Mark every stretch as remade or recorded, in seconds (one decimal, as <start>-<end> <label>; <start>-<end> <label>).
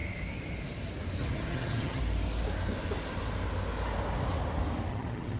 0.0-1.2 recorded; 1.2-2.0 remade; 2.0-4.9 recorded; 4.9-5.4 remade